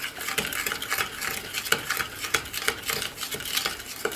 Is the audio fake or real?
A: real